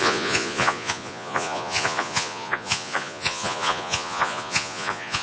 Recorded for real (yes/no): no